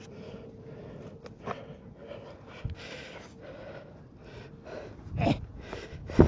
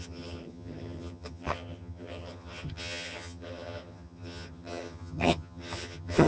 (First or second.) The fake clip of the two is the second